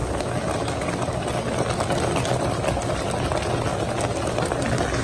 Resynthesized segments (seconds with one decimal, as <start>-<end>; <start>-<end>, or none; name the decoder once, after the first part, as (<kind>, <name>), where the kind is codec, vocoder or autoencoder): none